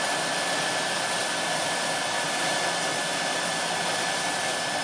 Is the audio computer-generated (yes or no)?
no